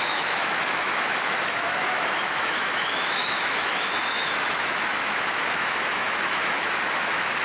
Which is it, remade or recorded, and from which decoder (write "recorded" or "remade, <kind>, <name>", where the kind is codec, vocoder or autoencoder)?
remade, autoencoder, DAC-VAE